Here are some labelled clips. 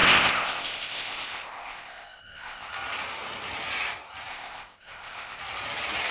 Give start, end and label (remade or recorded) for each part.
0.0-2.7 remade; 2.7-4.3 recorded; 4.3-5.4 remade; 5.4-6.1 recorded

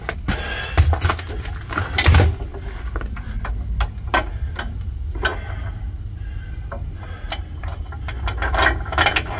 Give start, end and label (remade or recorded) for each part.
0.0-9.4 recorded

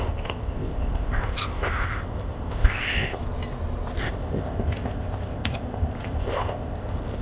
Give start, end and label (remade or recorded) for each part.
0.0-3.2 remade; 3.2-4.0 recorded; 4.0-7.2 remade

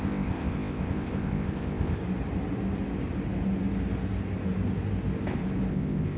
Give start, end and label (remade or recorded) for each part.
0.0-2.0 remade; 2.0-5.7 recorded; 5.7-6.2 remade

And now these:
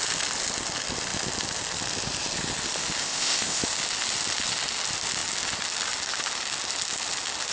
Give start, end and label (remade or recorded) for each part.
0.0-3.0 recorded; 3.0-3.6 remade; 3.6-7.5 recorded

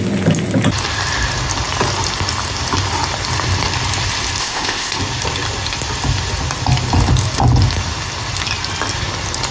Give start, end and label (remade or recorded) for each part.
0.0-4.4 recorded; 4.4-5.0 remade; 5.0-9.5 recorded

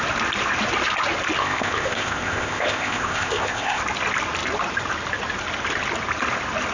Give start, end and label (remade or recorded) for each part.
0.0-1.4 recorded; 1.4-3.8 remade; 3.8-6.7 recorded